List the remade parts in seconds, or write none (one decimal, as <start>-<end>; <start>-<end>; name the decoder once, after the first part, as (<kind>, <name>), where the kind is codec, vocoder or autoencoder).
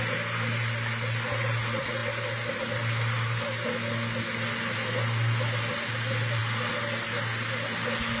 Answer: none